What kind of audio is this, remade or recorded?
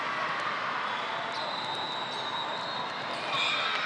recorded